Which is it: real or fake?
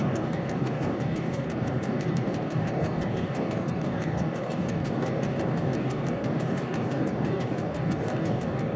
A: fake